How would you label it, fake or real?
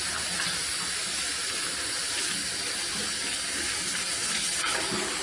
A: real